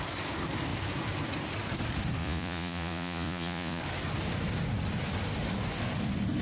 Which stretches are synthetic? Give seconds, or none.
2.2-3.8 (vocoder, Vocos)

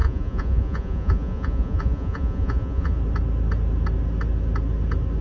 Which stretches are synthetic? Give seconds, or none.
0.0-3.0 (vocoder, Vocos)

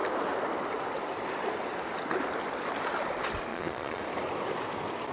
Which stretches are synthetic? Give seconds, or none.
3.5-4.0 (vocoder, Vocos)

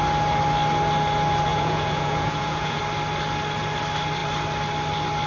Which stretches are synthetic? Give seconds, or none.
1.5-2.8 (vocoder, Vocos)

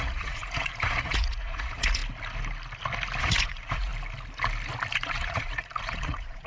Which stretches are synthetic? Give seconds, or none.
0.0-2.0 (vocoder, Vocos); 3.2-3.9; 4.9-6.5

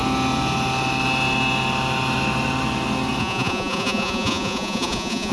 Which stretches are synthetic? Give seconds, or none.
3.2-5.3 (vocoder, Vocos)

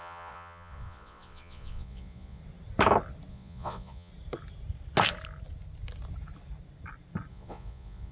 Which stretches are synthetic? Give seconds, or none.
0.0-2.4 (vocoder, Vocos); 3.3-4.1; 7.3-8.1

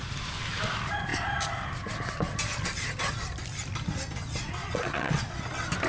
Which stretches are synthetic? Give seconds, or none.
4.6-5.2 (vocoder, Vocos)